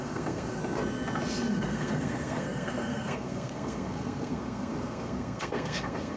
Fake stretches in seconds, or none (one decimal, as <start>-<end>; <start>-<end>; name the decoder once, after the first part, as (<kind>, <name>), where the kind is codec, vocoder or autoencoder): 0.0-0.6 (codec, SNAC); 1.5-6.2